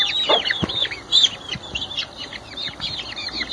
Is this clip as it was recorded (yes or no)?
yes